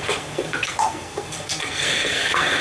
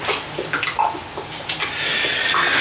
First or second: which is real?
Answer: second